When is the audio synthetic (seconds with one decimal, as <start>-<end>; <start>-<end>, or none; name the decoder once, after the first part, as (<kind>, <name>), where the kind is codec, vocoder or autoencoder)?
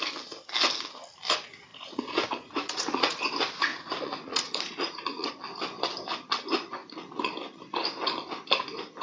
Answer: 1.7-3.2 (vocoder, Vocos); 3.7-5.3; 6.8-7.3